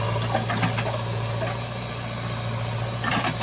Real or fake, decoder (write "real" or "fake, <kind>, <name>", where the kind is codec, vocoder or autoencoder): real